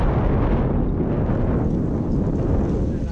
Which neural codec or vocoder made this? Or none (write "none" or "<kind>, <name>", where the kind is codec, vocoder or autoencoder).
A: none